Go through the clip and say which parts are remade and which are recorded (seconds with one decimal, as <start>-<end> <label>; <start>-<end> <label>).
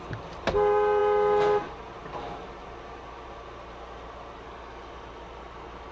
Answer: 0.0-5.9 recorded